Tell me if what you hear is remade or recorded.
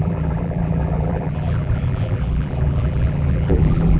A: remade